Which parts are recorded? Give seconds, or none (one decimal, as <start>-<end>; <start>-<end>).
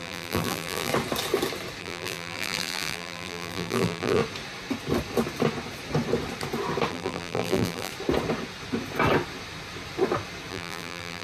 0.9-1.8; 4.2-6.9; 7.9-10.5